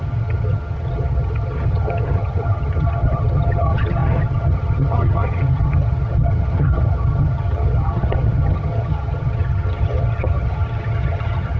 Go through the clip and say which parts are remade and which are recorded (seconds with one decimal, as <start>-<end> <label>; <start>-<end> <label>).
0.0-11.6 remade